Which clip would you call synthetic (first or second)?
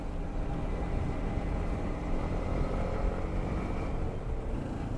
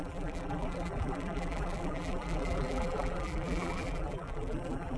second